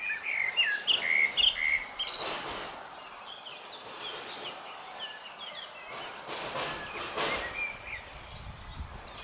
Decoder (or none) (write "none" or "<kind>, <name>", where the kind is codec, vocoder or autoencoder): none